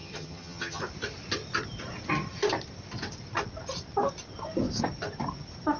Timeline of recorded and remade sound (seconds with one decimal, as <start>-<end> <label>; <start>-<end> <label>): 0.0-0.8 remade; 0.8-5.8 recorded